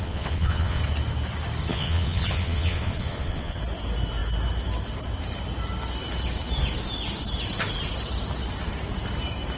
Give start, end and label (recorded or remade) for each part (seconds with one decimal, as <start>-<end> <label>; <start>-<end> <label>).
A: 0.0-0.8 remade; 0.8-1.7 recorded; 1.7-3.6 remade; 3.6-9.6 recorded